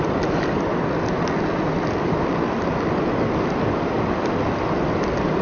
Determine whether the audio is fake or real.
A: real